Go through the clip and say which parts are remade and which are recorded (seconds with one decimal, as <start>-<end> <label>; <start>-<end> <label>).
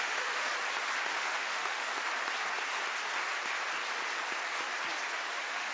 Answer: 0.0-0.5 remade; 0.5-1.1 recorded; 1.1-1.9 remade; 1.9-5.3 recorded; 5.3-5.7 remade